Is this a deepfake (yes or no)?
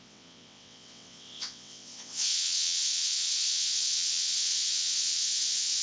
yes